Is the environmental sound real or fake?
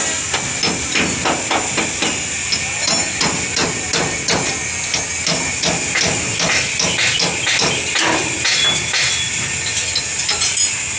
real